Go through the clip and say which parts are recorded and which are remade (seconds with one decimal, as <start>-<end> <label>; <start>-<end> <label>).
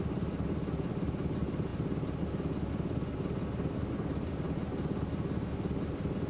0.0-6.3 recorded